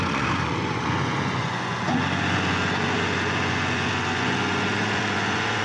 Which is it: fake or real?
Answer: fake